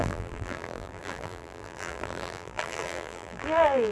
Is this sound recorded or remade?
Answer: remade